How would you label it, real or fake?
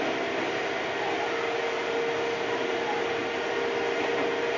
real